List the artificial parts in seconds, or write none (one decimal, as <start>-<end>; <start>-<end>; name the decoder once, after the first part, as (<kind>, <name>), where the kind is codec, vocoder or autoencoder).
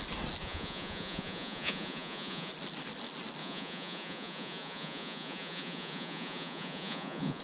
0.4-2.5 (vocoder, Vocos); 3.4-7.4